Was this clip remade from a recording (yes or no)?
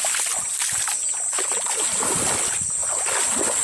no